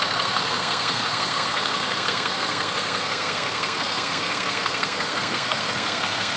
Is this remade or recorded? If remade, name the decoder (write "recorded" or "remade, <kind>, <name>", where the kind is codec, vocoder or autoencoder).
remade, codec, SNAC